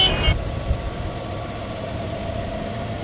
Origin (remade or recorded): recorded